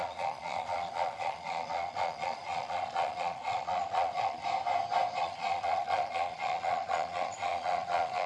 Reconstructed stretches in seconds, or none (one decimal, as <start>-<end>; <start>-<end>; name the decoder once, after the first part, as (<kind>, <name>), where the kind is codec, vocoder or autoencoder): 0.0-4.4 (vocoder, Vocos); 5.2-8.3